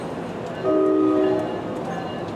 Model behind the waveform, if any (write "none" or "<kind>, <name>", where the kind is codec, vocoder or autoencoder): none